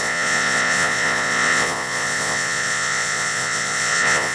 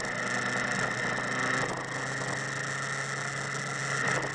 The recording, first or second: second